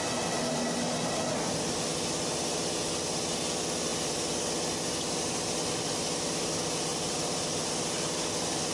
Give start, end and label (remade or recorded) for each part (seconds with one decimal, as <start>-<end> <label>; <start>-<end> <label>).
0.0-6.9 recorded; 6.9-7.7 remade; 7.7-8.7 recorded

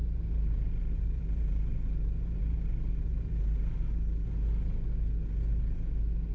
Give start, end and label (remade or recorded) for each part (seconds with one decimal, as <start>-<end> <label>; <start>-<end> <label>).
0.0-3.8 remade; 3.8-6.3 recorded

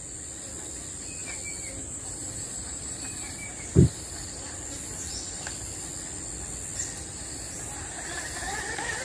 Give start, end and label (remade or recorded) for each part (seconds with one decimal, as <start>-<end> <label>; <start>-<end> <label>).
0.0-2.2 recorded; 2.2-5.9 remade; 5.9-9.0 recorded

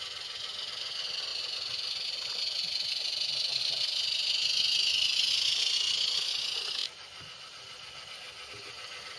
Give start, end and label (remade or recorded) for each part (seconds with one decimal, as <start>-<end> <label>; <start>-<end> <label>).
0.0-6.8 recorded; 6.8-8.2 remade; 8.2-9.2 recorded

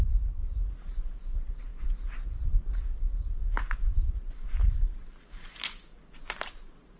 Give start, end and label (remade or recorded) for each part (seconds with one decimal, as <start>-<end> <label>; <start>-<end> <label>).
0.0-7.0 recorded

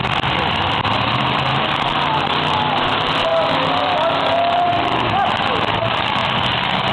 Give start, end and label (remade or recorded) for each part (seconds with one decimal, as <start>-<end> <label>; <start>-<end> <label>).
0.0-3.3 remade; 3.3-5.8 recorded; 5.8-6.2 remade; 6.2-6.9 recorded

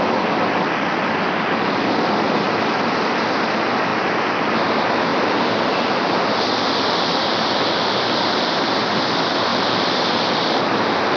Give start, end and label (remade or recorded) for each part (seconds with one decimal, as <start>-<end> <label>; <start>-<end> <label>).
0.0-5.1 recorded; 5.1-8.5 remade; 8.5-9.5 recorded; 9.5-10.6 remade; 10.6-11.2 recorded

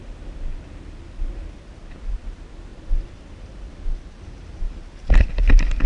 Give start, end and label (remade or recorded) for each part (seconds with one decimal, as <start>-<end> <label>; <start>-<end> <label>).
0.0-2.7 recorded; 2.7-4.6 remade; 4.6-5.9 recorded